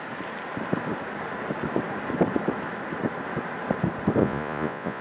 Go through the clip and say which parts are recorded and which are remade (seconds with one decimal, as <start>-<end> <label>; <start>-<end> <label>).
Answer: 0.0-4.2 recorded; 4.2-5.0 remade